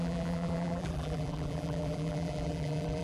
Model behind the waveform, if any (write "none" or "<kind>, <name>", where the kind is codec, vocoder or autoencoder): vocoder, BigVGAN v2